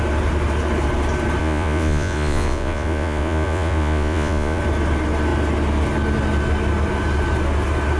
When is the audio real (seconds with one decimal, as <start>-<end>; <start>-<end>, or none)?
0.0-1.4; 4.6-8.0